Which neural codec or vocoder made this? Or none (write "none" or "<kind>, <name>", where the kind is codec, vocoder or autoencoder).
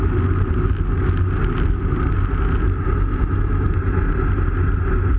none